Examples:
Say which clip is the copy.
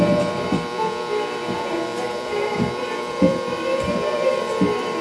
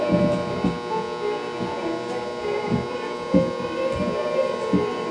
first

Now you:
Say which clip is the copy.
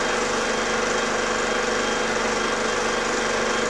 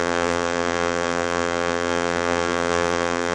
second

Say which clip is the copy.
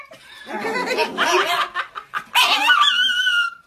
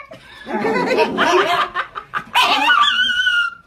second